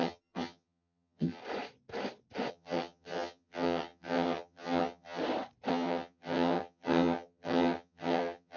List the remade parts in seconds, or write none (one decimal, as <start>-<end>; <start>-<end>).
0.0-1.4; 2.5-5.2; 5.7-8.6